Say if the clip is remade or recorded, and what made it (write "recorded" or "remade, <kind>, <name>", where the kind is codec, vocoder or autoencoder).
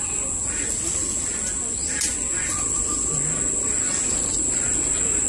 recorded